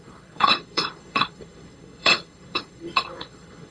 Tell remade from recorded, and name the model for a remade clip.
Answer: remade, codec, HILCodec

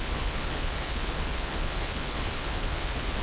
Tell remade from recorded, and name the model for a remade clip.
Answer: remade, codec, HILCodec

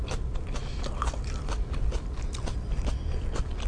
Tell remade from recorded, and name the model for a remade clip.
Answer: recorded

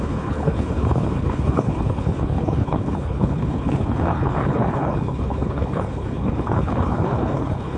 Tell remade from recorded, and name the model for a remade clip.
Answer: remade, codec, HILCodec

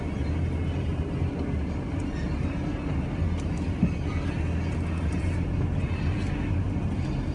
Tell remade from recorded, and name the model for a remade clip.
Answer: recorded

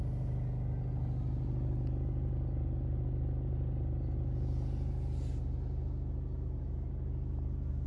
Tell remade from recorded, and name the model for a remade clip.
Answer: recorded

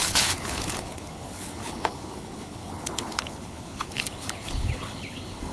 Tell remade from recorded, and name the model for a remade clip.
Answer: remade, codec, HILCodec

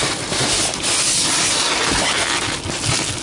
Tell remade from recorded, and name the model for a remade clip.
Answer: recorded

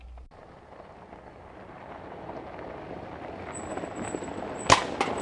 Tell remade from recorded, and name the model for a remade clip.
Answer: recorded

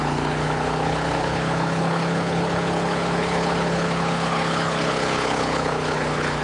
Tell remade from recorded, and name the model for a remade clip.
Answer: remade, codec, HILCodec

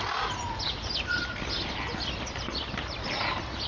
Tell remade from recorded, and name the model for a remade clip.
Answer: recorded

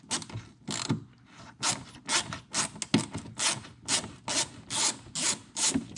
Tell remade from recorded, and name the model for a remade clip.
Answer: recorded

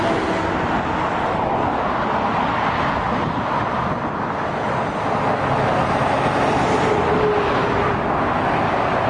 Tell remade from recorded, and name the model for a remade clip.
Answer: recorded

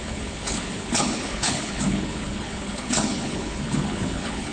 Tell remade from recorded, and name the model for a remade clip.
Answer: remade, codec, HILCodec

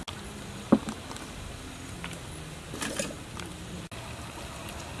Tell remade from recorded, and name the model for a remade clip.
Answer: recorded